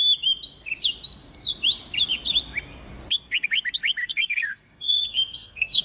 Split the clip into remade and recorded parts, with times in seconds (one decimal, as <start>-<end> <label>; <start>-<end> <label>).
0.0-4.0 recorded; 4.0-5.8 remade